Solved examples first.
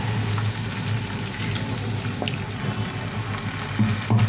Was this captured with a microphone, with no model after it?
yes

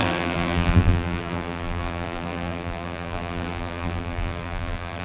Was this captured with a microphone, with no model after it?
no